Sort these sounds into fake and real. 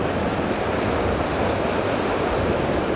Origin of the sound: real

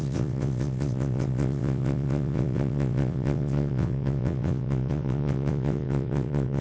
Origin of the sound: fake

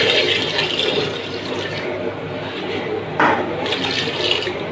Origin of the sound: real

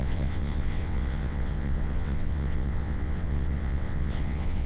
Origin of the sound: fake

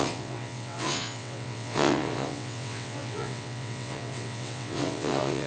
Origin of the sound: fake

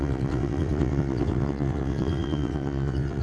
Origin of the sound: fake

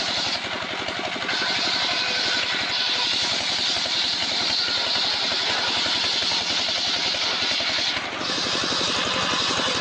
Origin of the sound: real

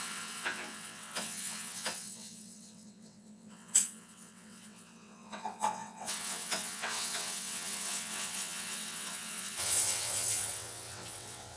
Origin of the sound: fake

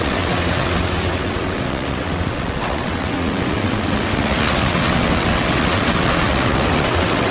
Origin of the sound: fake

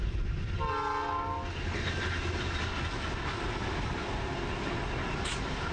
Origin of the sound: real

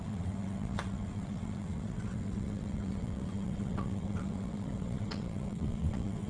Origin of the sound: fake